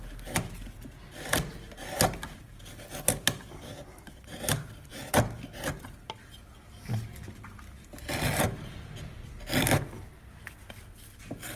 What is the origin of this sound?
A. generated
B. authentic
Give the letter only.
B